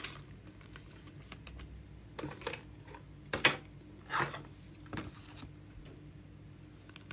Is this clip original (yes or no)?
yes